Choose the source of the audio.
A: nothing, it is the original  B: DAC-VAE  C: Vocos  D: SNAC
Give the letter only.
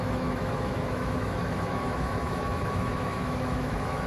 B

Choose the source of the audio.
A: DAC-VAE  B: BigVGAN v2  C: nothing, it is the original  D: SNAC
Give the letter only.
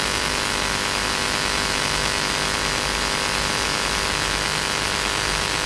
A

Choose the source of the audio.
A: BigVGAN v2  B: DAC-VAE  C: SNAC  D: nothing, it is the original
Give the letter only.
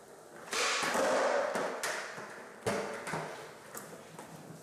D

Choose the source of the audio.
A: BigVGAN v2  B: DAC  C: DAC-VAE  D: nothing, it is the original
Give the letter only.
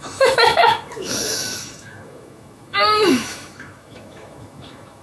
C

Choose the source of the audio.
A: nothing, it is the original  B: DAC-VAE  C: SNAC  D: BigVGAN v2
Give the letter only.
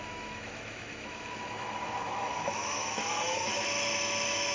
B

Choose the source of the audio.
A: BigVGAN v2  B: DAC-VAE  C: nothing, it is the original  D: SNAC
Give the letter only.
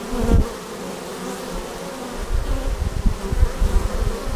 C